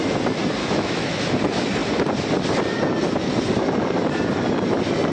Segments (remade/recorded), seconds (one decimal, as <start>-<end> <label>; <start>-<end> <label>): 0.0-0.6 recorded; 0.6-1.2 remade; 1.2-5.1 recorded